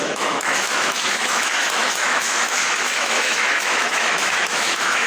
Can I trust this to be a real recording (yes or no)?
no